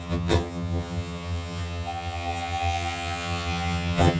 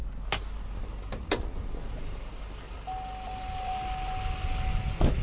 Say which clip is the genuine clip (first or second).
second